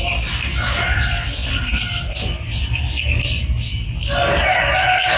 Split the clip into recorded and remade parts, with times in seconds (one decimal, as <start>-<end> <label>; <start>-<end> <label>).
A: 0.0-5.2 recorded